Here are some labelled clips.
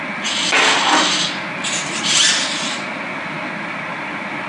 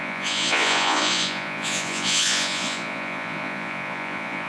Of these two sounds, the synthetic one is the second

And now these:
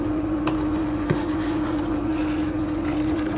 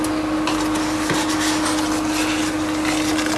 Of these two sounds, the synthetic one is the first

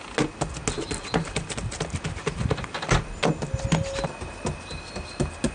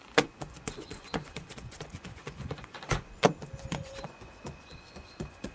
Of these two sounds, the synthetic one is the second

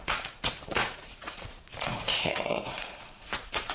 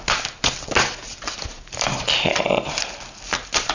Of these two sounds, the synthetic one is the first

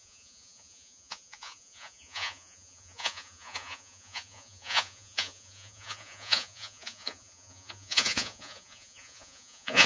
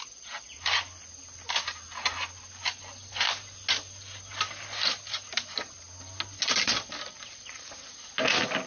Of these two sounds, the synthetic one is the first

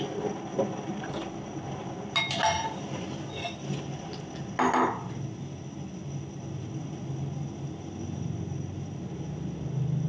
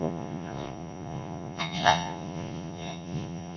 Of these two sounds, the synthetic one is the second